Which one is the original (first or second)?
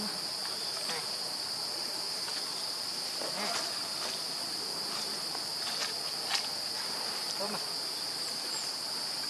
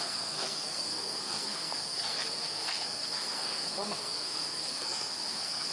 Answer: first